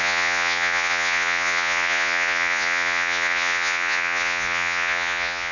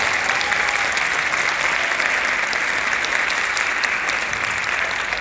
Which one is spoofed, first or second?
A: first